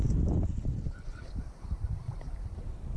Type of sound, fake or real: fake